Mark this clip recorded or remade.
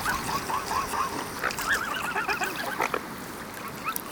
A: recorded